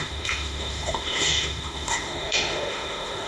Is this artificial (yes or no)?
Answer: yes